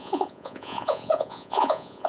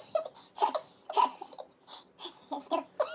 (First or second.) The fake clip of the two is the first